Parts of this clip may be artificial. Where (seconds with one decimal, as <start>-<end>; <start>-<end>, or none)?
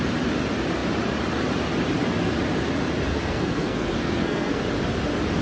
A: 3.1-4.6